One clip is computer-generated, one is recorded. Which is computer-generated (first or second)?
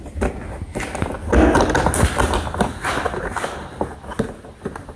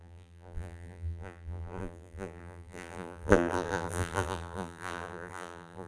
second